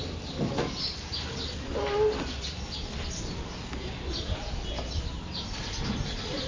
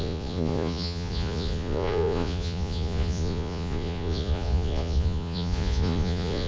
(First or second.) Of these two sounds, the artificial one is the second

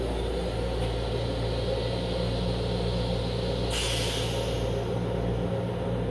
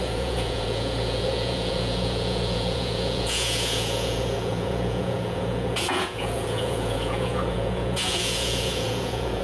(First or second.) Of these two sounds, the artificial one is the second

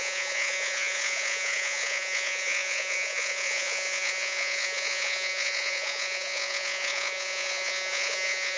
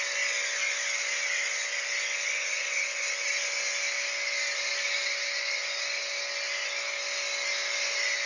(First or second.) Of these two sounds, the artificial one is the first